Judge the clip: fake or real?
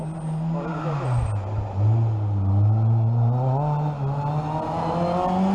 real